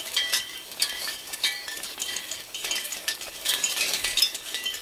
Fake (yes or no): yes